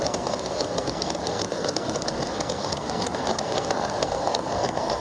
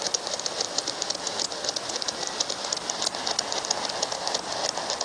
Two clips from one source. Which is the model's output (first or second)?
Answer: first